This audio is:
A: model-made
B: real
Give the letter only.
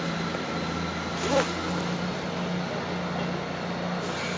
B